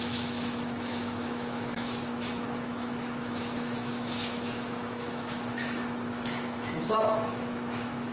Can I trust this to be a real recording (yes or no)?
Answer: no